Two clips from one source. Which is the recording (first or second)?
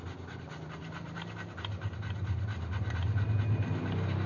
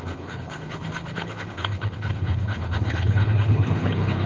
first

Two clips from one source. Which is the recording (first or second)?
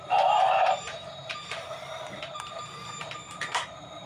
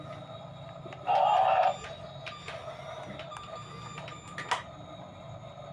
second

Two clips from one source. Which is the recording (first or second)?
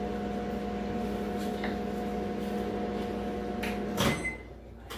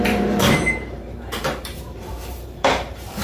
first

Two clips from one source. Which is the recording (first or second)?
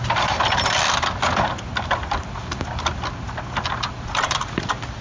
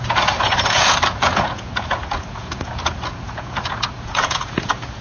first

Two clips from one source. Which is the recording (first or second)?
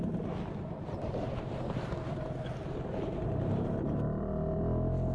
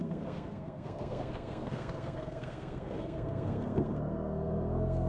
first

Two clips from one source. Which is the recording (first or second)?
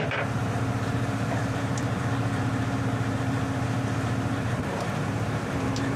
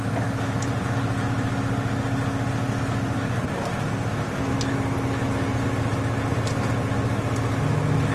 second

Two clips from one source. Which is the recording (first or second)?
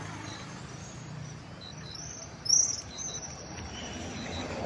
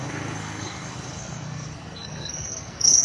first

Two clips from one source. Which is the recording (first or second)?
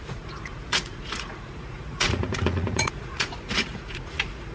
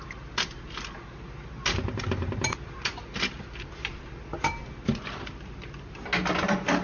second